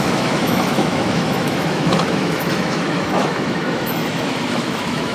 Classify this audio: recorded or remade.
remade